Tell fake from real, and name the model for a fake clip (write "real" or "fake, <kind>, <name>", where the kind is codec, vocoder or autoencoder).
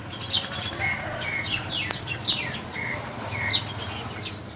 real